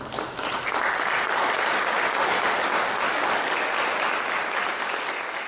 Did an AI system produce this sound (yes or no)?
no